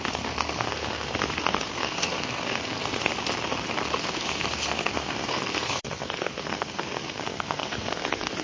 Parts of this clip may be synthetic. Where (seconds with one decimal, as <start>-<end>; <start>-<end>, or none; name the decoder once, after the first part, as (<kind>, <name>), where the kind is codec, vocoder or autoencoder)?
0.0-3.1 (codec, SNAC); 4.0-8.4